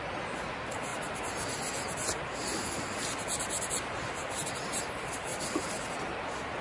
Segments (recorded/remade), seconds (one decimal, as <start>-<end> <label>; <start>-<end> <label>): 0.0-6.6 recorded